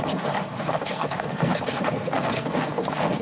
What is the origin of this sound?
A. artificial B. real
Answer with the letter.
A